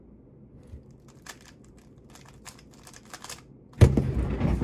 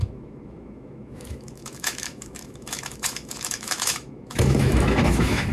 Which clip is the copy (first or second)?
second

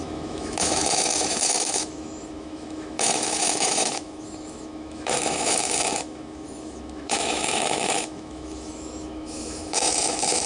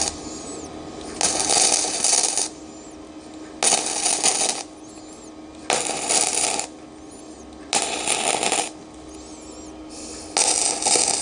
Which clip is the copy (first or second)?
first